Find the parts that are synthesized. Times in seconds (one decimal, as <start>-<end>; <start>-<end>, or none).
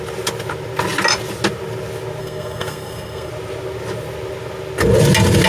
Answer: 2.2-3.3